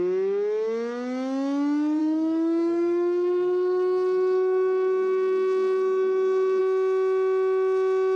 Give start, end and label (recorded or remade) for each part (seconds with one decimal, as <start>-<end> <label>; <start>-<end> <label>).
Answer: 0.0-2.0 recorded; 2.0-6.6 remade; 6.6-8.2 recorded